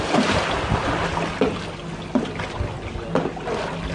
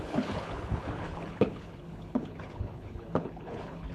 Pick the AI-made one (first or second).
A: second